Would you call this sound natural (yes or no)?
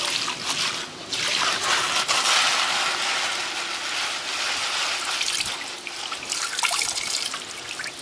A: yes